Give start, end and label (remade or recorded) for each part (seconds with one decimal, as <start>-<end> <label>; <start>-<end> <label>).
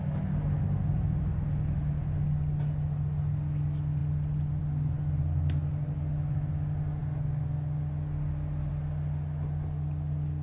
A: 0.0-10.4 recorded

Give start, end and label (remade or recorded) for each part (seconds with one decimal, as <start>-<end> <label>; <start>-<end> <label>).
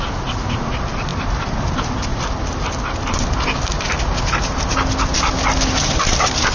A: 0.0-1.1 recorded; 1.1-1.7 remade; 1.7-2.1 recorded; 2.1-3.3 remade; 3.3-6.5 recorded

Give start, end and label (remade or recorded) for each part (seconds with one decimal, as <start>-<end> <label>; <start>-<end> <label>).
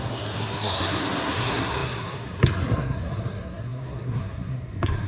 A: 0.0-5.1 remade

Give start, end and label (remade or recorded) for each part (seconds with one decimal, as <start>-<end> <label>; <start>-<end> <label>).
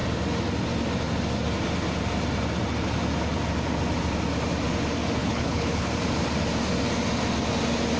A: 0.0-5.2 recorded; 5.2-5.9 remade; 5.9-8.0 recorded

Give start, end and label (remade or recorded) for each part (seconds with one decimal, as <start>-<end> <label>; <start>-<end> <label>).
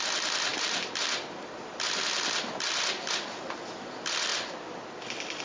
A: 0.0-5.4 recorded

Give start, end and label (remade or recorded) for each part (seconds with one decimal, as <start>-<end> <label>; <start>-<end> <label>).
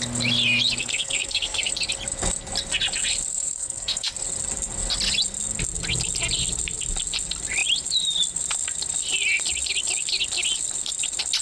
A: 0.0-0.8 recorded; 0.8-1.7 remade; 1.7-3.3 recorded; 3.3-4.1 remade; 4.1-11.4 recorded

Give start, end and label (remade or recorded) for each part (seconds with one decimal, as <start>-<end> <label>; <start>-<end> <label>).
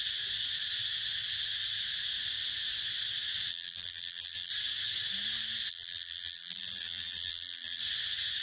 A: 0.0-3.5 recorded; 3.5-4.5 remade; 4.5-5.7 recorded; 5.7-7.8 remade; 7.8-8.4 recorded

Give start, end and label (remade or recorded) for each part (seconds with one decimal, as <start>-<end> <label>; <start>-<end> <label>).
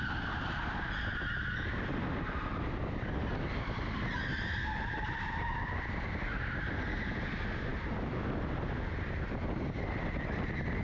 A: 0.0-10.8 recorded